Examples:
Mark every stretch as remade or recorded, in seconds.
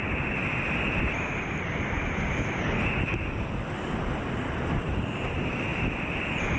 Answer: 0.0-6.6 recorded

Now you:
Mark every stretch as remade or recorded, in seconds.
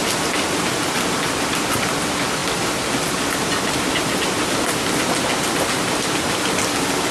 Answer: 0.0-7.1 recorded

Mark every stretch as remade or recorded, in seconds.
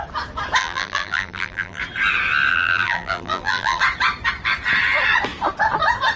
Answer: 0.0-0.6 recorded; 0.6-1.8 remade; 1.8-2.5 recorded; 2.5-3.8 remade; 3.8-6.2 recorded